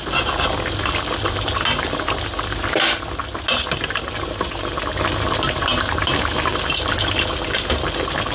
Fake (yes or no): no